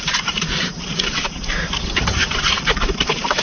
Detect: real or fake fake